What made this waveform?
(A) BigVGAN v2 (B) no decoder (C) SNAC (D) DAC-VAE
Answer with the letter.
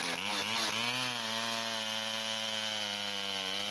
B